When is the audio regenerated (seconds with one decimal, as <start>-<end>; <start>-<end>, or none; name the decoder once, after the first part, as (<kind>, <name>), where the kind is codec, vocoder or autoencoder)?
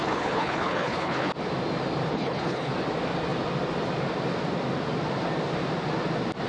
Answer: 0.0-1.3 (codec, HILCodec); 2.1-2.7